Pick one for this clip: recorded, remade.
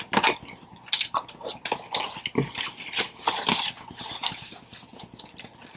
recorded